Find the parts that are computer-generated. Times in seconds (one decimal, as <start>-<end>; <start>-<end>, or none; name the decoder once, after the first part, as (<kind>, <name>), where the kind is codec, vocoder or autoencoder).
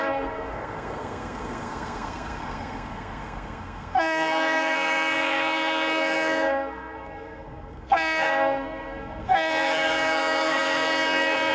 0.0-11.5 (codec, SNAC)